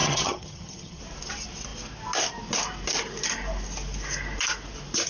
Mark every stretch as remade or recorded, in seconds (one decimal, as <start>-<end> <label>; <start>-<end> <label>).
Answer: 0.0-1.0 remade; 1.0-5.1 recorded